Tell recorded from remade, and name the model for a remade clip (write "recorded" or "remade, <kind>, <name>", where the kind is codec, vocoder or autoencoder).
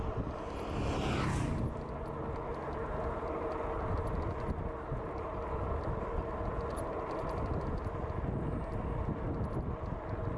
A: recorded